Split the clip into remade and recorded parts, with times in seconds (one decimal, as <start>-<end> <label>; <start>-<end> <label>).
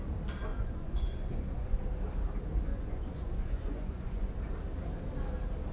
0.0-0.5 recorded; 0.5-1.8 remade; 1.8-2.7 recorded; 2.7-4.3 remade; 4.3-5.7 recorded